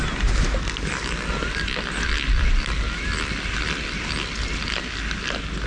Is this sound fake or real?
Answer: real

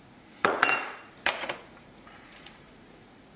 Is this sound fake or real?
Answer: fake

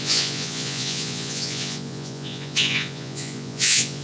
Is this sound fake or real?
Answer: fake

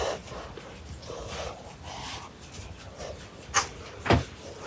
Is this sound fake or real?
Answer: real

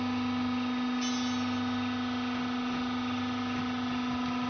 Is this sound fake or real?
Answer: real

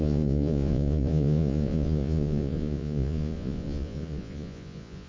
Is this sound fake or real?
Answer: fake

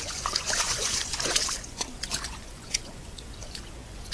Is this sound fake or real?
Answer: fake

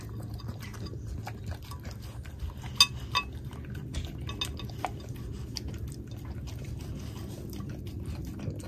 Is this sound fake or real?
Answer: real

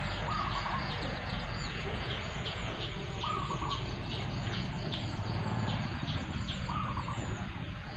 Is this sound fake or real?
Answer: fake